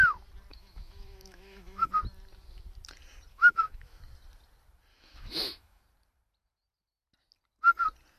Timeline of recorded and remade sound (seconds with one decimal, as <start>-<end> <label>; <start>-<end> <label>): 0.0-0.5 recorded; 0.5-1.9 remade; 1.9-3.3 recorded; 3.3-4.0 remade; 4.0-4.9 recorded; 4.9-5.8 remade; 5.8-8.2 recorded